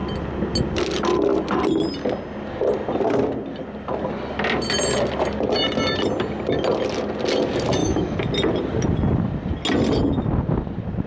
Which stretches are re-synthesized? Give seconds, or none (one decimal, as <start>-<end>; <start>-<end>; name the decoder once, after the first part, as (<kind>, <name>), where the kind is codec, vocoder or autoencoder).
7.8-8.3 (autoencoder, DAC-VAE)